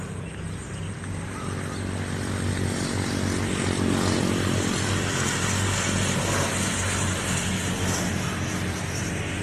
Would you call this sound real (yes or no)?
yes